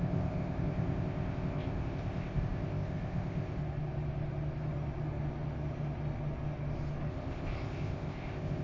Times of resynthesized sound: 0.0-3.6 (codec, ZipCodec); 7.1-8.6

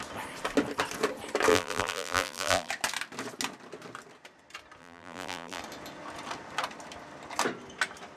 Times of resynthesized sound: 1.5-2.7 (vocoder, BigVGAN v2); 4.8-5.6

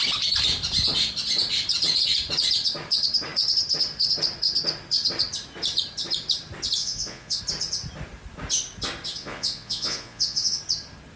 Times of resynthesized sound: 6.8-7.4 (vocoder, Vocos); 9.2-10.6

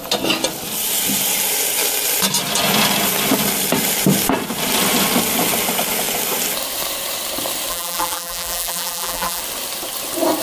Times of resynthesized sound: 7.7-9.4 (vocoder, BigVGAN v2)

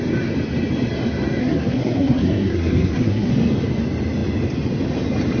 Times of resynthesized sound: 1.4-3.3 (codec, SNAC)

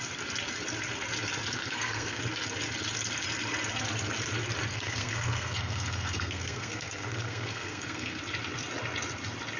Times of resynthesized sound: 1.6-2.2 (codec, SNAC); 4.7-8.2

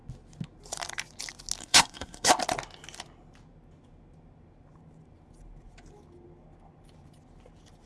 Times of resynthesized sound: 1.6-2.3 (codec, SNAC)

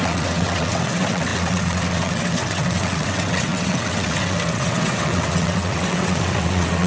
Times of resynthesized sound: 0.0-6.9 (vocoder, WaveNeXt)